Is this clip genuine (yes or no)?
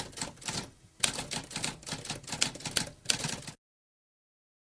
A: yes